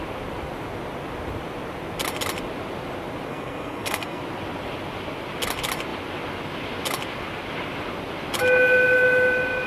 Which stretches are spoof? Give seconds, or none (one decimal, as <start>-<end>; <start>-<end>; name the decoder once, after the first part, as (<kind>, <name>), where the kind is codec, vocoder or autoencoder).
3.3-4.2 (codec, SNAC)